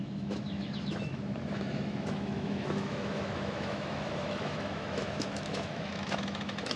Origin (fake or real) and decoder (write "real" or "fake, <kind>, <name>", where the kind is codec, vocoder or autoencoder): fake, autoencoder, DAC-VAE